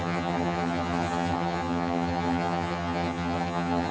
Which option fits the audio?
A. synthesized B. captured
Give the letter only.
A